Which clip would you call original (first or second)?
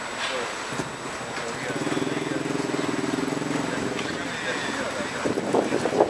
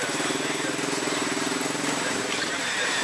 first